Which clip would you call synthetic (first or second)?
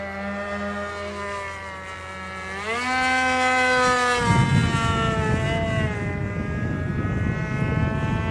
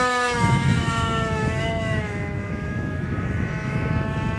second